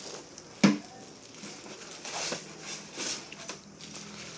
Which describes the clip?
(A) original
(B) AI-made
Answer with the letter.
A